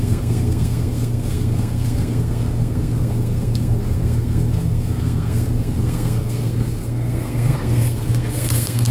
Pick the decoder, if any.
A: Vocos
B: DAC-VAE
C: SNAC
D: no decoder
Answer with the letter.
C